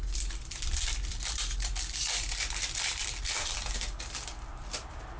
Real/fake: fake